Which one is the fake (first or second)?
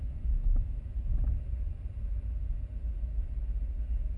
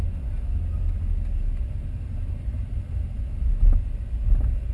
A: first